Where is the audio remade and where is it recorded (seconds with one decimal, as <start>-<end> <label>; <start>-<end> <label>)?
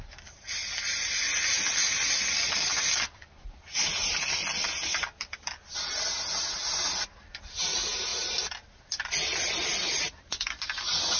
0.0-11.2 recorded